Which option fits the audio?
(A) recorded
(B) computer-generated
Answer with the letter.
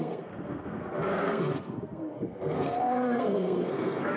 B